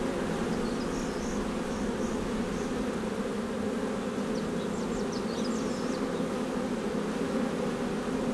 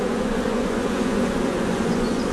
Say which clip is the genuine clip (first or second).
first